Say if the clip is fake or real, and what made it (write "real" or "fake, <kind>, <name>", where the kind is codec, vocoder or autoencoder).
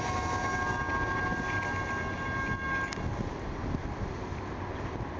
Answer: real